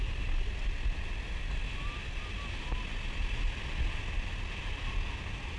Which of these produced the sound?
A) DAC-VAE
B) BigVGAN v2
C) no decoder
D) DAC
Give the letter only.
C